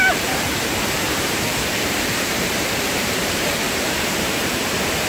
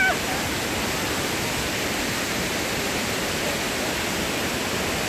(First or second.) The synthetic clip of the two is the first